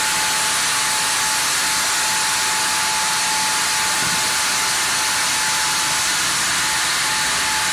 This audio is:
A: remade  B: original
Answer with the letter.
B